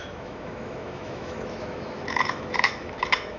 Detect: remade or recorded remade